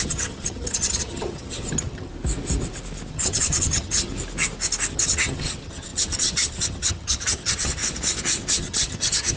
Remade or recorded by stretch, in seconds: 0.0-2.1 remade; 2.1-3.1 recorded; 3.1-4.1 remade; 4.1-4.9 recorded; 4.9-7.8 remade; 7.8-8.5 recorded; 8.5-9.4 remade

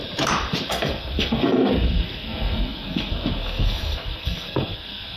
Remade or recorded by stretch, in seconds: 0.0-0.7 recorded; 0.7-5.2 remade